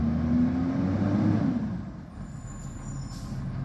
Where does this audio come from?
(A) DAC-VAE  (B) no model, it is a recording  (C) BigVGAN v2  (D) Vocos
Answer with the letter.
B